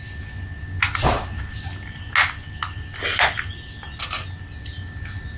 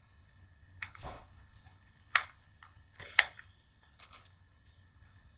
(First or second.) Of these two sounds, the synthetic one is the second